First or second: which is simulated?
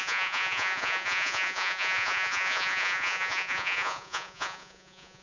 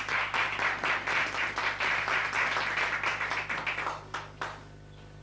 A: first